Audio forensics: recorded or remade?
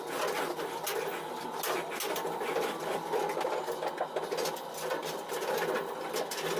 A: recorded